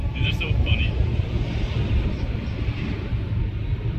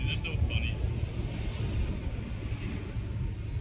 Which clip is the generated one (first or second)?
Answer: first